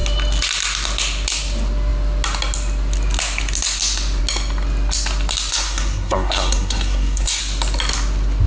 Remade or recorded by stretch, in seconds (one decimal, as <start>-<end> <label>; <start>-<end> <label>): 0.0-5.5 recorded; 5.5-7.4 remade; 7.4-8.5 recorded